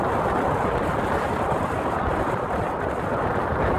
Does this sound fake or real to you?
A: real